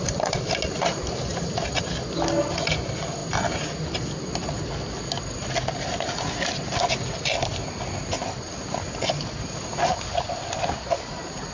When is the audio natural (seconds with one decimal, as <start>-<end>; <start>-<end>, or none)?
0.0-11.5